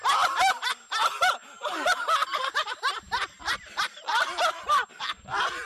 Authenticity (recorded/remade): recorded